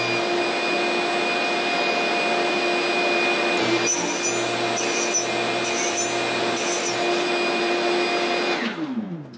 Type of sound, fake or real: real